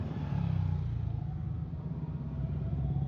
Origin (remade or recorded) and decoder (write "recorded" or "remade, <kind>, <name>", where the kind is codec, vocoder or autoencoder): recorded